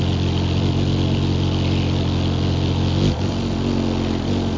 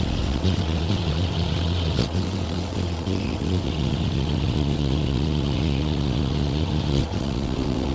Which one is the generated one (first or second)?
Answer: second